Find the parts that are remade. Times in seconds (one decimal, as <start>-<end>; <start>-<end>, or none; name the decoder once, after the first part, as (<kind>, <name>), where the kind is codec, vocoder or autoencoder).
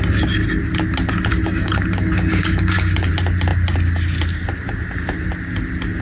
1.3-3.1 (codec, DAC)